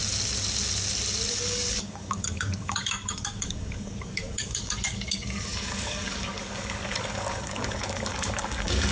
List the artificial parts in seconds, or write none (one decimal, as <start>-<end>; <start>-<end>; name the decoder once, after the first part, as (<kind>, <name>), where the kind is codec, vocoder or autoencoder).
1.3-8.9 (codec, DAC)